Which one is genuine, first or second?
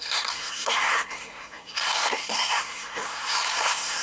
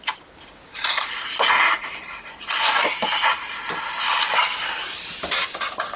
second